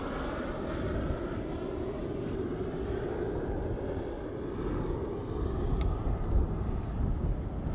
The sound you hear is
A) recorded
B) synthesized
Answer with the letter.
A